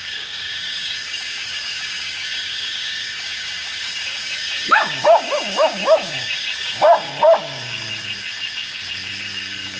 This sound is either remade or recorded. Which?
remade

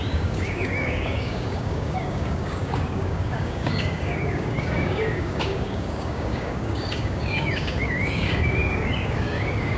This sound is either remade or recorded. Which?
remade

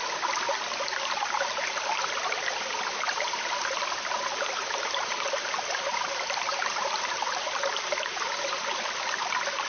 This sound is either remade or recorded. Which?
recorded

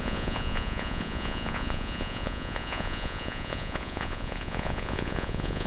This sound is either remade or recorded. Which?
remade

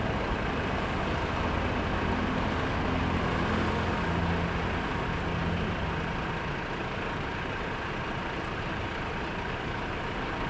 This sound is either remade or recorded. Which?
recorded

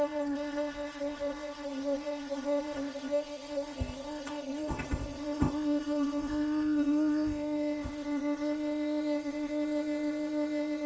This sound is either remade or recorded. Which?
remade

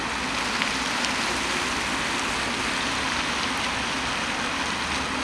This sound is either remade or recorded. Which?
recorded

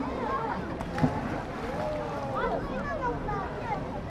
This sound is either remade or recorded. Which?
recorded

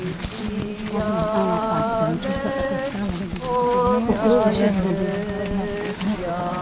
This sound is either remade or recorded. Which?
recorded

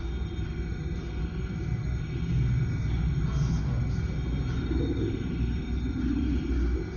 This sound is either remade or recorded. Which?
recorded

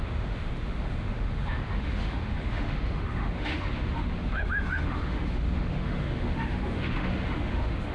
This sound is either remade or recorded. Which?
remade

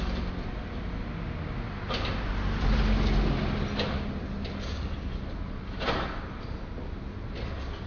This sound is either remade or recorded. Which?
recorded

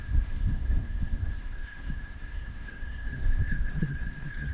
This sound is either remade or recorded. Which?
remade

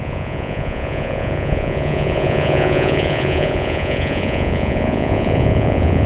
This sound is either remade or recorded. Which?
remade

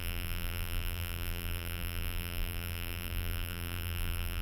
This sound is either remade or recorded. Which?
remade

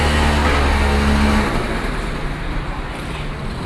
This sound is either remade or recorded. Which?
recorded